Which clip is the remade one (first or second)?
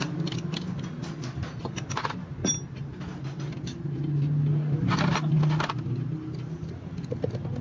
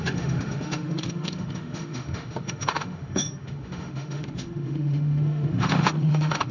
second